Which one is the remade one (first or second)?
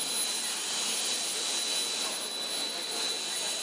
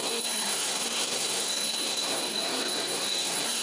second